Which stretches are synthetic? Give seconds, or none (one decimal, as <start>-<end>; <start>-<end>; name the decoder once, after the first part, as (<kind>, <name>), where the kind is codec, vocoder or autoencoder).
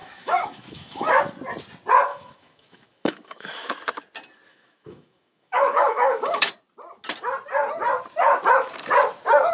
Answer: 0.0-1.2 (autoencoder, DAC-VAE); 2.1-3.7; 4.5-6.5